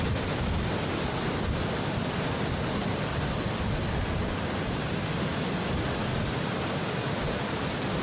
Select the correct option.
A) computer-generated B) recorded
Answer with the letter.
B